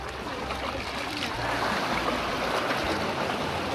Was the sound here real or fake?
real